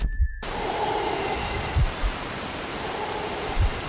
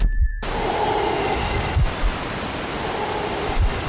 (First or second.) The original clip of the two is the second